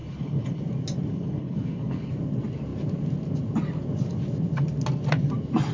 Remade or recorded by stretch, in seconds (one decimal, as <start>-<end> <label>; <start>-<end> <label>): 0.0-0.6 remade; 0.6-1.1 recorded; 1.1-2.1 remade; 2.1-5.7 recorded